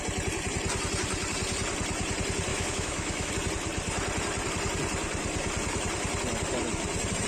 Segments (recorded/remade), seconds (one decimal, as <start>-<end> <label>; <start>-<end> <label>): 0.0-2.5 recorded; 2.5-3.3 remade; 3.3-7.3 recorded